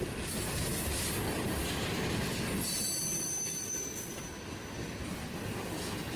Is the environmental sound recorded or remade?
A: recorded